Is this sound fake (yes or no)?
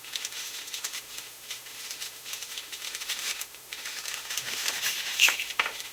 yes